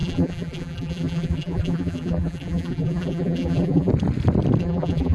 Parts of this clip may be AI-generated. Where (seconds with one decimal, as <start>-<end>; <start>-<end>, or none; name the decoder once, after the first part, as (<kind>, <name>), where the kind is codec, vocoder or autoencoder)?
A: 0.0-3.9 (vocoder, BigVGAN v2); 4.6-5.1